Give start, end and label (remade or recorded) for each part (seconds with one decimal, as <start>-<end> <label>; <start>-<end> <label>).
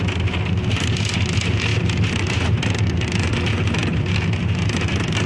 0.0-5.3 recorded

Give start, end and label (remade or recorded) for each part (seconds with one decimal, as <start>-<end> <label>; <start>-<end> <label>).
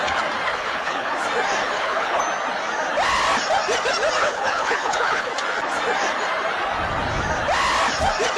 0.0-0.5 recorded; 0.5-1.1 remade; 1.1-1.6 recorded; 1.6-2.2 remade; 2.2-4.2 recorded; 4.2-5.3 remade; 5.3-8.4 recorded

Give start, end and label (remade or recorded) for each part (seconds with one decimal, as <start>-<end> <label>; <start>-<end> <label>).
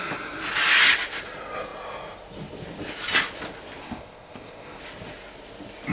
0.0-3.8 recorded; 3.8-4.8 remade; 4.8-5.9 recorded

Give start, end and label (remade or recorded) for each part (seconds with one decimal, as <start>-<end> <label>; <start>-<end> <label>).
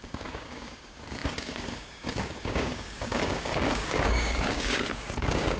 0.0-5.6 remade